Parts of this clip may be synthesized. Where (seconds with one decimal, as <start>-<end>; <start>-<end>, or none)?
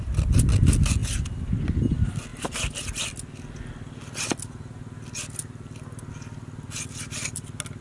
none